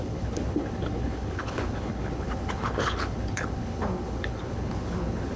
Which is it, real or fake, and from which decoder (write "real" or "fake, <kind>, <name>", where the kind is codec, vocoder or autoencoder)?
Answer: fake, codec, HILCodec